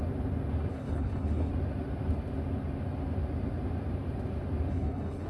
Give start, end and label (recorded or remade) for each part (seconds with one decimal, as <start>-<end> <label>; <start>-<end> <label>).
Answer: 0.0-0.7 recorded; 0.7-1.5 remade; 1.5-4.7 recorded; 4.7-5.3 remade